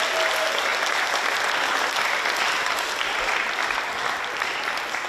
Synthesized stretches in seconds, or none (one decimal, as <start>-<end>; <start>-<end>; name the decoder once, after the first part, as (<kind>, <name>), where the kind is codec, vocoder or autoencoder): none